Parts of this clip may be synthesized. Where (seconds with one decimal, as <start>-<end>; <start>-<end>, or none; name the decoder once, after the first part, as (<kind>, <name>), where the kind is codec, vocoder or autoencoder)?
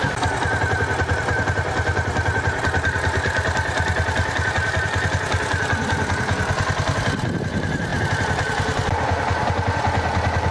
none